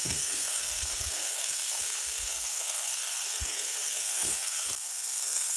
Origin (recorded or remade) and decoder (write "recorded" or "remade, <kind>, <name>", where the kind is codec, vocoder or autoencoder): remade, codec, SNAC